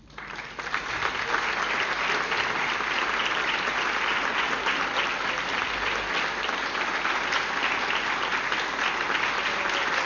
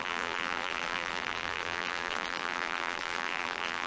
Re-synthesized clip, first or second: second